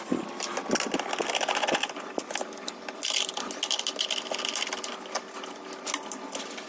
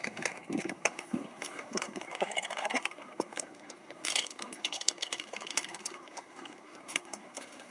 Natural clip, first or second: first